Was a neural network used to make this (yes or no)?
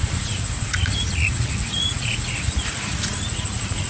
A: yes